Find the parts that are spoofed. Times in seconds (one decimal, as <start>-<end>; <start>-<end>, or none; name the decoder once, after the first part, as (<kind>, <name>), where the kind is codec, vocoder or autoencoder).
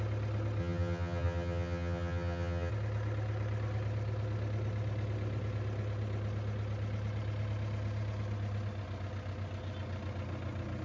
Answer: 0.6-2.7 (vocoder, HiFi-GAN)